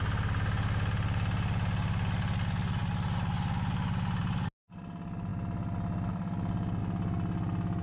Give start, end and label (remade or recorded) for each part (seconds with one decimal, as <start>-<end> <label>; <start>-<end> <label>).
0.0-7.8 recorded